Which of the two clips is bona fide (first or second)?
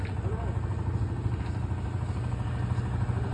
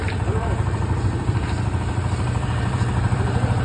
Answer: first